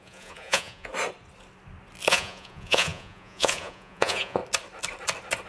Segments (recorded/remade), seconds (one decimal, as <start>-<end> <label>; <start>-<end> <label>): 0.0-0.9 remade; 0.9-2.1 recorded; 2.1-4.4 remade; 4.4-5.5 recorded